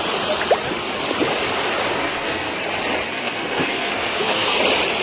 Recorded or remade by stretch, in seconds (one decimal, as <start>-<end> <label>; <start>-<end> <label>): 0.0-2.0 recorded; 2.0-2.6 remade; 2.6-3.1 recorded; 3.1-4.6 remade; 4.6-5.0 recorded